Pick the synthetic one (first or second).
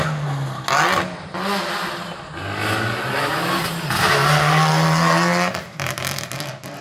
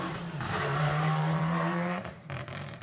second